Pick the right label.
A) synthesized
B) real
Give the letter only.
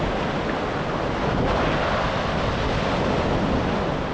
B